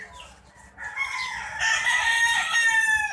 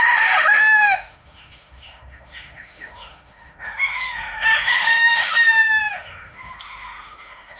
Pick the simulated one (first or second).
second